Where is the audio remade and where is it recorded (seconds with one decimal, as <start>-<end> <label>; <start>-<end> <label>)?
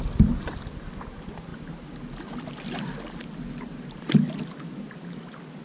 0.0-5.6 recorded